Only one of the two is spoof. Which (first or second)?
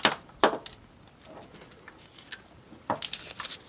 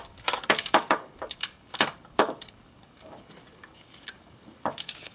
second